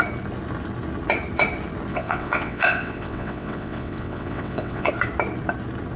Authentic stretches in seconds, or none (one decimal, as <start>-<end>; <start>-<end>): 0.0-1.9; 4.9-6.0